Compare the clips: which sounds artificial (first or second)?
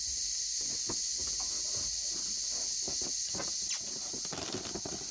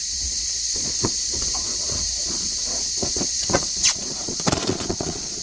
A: second